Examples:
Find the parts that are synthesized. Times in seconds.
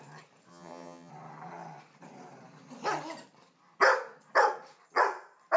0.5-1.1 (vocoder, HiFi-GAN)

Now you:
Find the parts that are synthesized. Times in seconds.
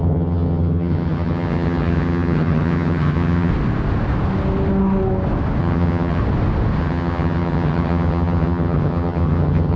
0.0-3.5 (vocoder, HiFi-GAN); 5.6-6.2; 6.8-9.8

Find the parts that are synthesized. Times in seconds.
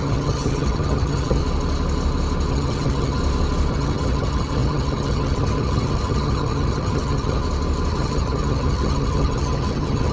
0.0-1.4 (vocoder, HiFi-GAN); 2.5-3.2; 3.7-7.4; 7.9-10.1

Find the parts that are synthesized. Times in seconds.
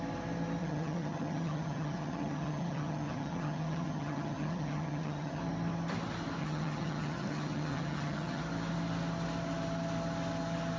0.6-5.4 (vocoder, HiFi-GAN); 6.4-8.4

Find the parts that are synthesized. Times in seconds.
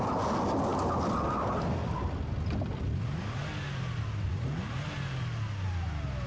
none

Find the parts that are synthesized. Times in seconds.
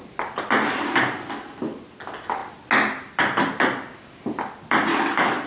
none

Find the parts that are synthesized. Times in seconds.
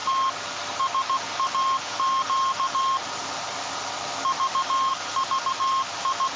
none